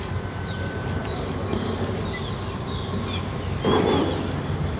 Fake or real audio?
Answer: real